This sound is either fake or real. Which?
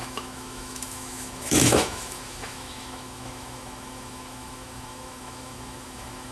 fake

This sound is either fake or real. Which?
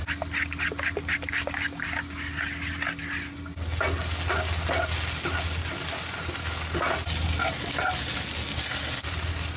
real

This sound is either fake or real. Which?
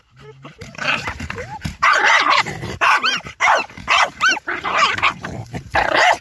fake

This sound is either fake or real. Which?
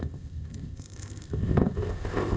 fake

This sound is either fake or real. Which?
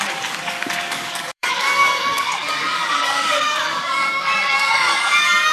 fake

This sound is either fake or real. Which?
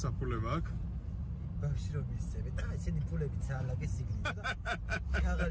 real